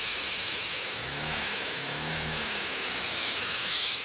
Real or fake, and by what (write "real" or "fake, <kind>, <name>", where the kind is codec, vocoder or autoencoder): fake, autoencoder, DAC-VAE